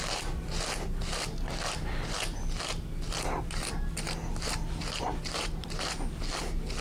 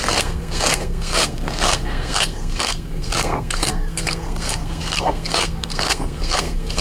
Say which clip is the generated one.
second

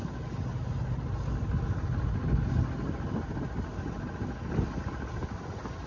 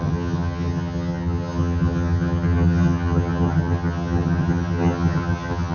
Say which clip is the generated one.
second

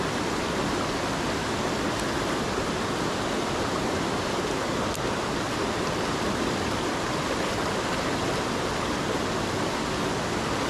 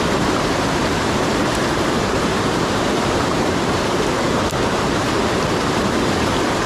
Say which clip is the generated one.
second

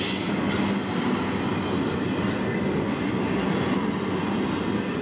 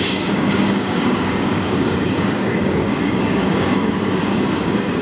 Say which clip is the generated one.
second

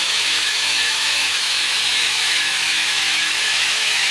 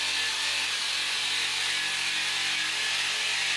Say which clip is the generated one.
first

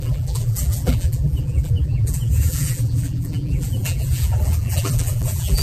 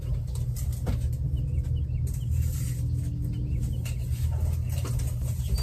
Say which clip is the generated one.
first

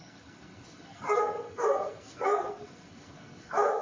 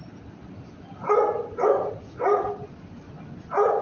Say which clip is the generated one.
first